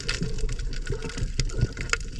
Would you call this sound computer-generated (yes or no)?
no